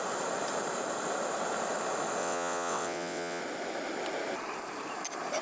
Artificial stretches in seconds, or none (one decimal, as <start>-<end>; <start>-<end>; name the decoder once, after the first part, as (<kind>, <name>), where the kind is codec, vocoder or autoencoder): 2.2-3.4 (vocoder, WaveNeXt)